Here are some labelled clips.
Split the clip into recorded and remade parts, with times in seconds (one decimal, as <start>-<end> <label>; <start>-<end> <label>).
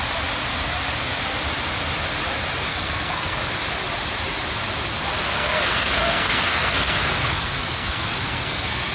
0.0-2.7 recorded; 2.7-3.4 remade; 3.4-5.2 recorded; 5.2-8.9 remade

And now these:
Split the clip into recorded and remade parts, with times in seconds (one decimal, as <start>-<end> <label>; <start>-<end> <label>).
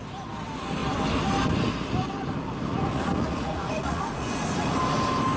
0.0-2.7 recorded; 2.7-4.8 remade; 4.8-5.4 recorded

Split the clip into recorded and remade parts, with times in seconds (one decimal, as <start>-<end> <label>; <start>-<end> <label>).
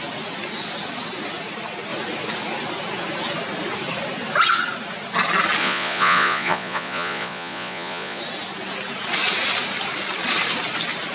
0.0-5.6 recorded; 5.6-8.2 remade; 8.2-11.1 recorded